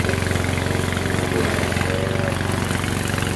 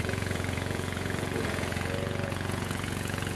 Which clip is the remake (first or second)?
second